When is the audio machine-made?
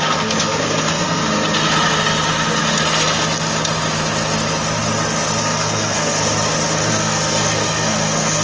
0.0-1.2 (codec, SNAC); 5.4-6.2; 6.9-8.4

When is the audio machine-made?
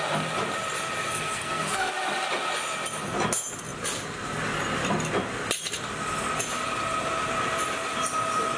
1.0-1.9 (codec, SNAC)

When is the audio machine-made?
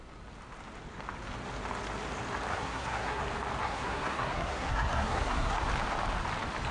2.5-3.2 (codec, SNAC); 3.6-5.6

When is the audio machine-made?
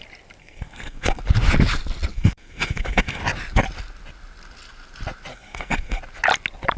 0.4-1.2 (codec, SNAC); 2.1-3.2; 5.3-6.0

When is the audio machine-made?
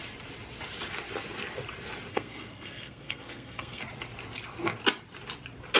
2.1-3.8 (codec, SNAC)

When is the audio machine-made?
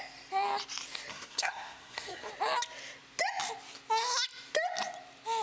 1.1-2.3 (codec, SNAC)